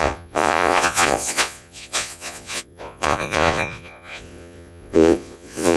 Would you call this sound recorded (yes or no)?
no